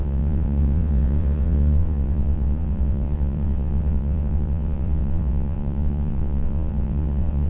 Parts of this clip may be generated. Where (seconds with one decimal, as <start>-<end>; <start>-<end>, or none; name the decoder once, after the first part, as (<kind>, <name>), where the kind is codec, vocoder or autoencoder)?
0.0-7.5 (vocoder, WaveNeXt)